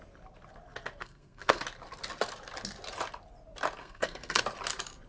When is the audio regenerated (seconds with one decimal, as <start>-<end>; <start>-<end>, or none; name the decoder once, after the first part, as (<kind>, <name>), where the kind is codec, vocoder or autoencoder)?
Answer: 1.0-1.6 (codec, SNAC); 3.8-4.4